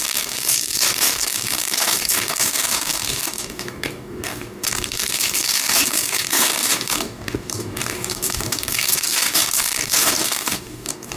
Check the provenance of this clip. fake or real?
fake